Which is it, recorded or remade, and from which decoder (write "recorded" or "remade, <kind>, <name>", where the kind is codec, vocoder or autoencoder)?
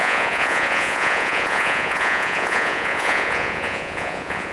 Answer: remade, vocoder, Vocos